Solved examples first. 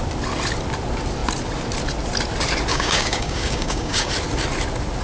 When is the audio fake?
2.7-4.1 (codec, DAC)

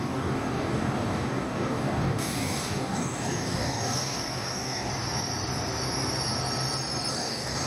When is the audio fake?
0.0-4.9 (codec, DAC); 7.1-7.7

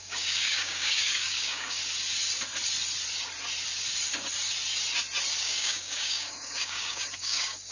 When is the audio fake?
0.0-1.8 (codec, DAC); 5.4-7.7

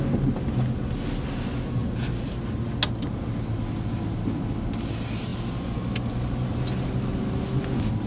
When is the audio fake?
none

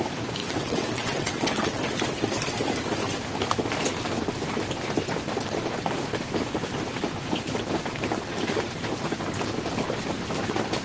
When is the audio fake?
0.4-1.9 (vocoder, WaveNeXt)

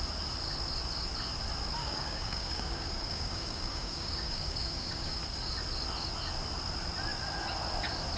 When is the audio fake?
1.8-5.2 (codec, DAC)